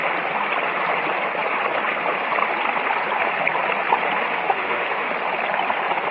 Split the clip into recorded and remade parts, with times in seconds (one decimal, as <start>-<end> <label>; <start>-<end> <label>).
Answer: 0.0-4.3 recorded; 4.3-5.1 remade; 5.1-6.1 recorded

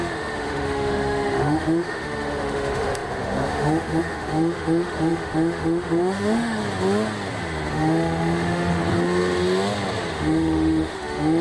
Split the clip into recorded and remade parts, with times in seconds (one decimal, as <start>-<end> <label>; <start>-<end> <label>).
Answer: 0.0-6.6 remade; 6.6-7.7 recorded; 7.7-8.8 remade; 8.8-10.1 recorded; 10.1-11.4 remade